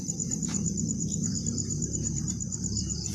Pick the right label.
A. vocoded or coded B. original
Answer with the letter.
A